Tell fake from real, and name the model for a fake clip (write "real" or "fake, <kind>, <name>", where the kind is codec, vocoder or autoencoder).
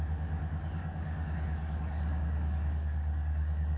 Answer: fake, codec, DAC